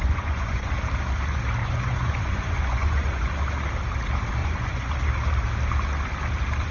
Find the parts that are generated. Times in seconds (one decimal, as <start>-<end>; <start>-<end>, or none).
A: 0.0-0.7; 1.6-3.3; 4.4-4.9